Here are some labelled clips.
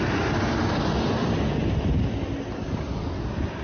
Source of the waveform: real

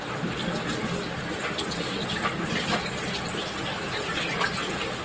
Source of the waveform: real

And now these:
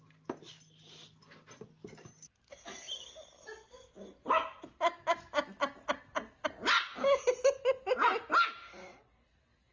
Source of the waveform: real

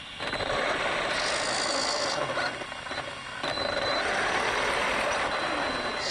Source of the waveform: real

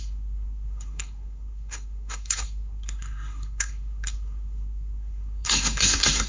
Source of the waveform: fake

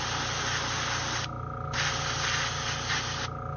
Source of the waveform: real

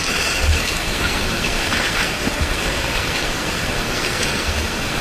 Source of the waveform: fake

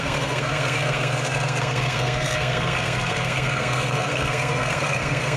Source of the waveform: fake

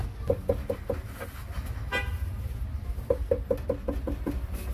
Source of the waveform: real